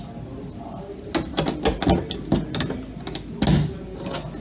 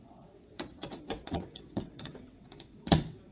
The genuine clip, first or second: first